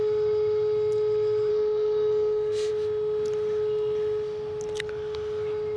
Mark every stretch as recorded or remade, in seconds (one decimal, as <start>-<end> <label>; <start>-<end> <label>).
0.0-1.5 recorded; 1.5-2.7 remade; 2.7-5.8 recorded